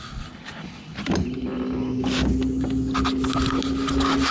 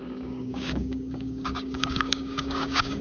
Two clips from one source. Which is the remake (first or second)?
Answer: second